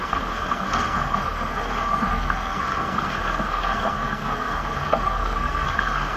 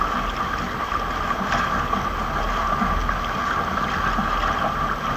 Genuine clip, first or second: second